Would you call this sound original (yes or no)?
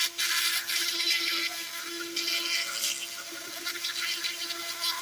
yes